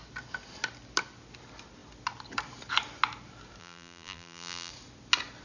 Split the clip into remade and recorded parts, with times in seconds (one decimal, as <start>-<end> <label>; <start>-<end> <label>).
0.0-3.6 recorded; 3.6-4.7 remade; 4.7-5.4 recorded